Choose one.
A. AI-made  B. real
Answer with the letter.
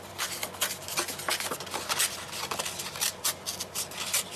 B